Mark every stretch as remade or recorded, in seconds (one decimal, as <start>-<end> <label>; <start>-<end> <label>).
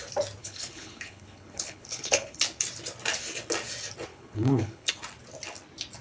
0.0-0.4 recorded; 0.4-2.4 remade; 2.4-4.1 recorded; 4.1-4.9 remade; 4.9-6.0 recorded